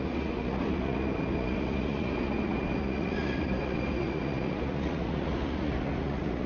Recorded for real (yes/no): no